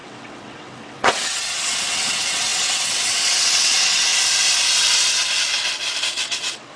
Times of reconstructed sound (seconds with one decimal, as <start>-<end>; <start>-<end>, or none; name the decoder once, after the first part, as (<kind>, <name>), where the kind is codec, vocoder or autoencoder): 0.0-4.1 (vocoder, WaveNeXt); 6.1-6.8